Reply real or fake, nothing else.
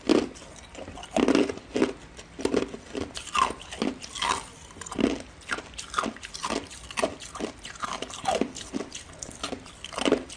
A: real